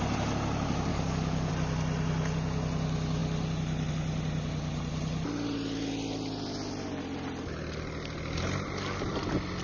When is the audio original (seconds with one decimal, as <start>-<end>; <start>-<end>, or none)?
0.0-0.9; 1.5-9.6